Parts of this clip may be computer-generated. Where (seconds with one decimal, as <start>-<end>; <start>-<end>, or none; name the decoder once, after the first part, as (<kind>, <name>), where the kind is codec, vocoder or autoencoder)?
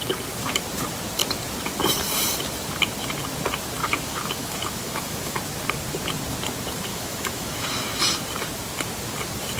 3.8-5.4 (autoencoder, DAC-VAE); 6.9-8.0